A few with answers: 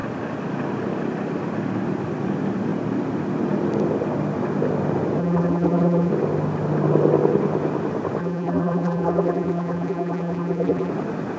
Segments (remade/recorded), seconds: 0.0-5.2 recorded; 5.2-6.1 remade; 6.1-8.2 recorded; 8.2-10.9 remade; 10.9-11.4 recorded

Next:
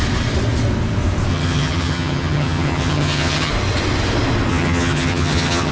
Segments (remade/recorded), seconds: 0.0-1.3 recorded; 1.3-3.5 remade; 3.5-4.5 recorded; 4.5-5.7 remade